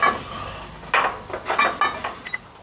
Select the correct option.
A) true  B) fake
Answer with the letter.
A